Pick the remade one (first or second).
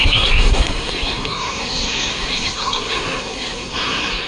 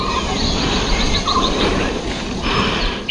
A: first